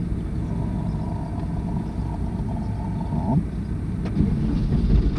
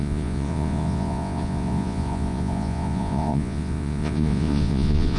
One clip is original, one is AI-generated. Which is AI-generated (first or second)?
second